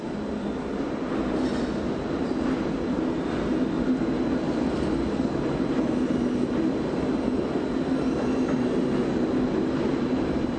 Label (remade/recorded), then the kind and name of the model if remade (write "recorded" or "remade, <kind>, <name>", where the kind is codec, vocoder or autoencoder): recorded